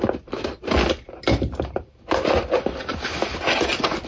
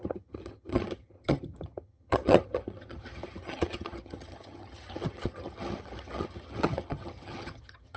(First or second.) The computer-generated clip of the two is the second